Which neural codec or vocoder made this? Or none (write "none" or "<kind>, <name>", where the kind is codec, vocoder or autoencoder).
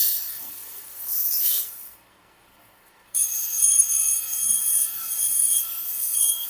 codec, SNAC